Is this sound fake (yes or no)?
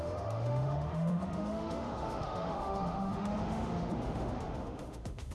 yes